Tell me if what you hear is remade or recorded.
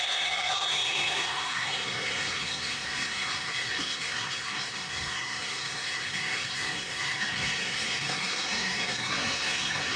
remade